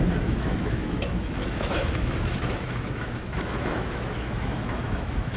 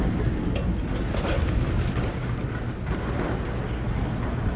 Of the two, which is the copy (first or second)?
first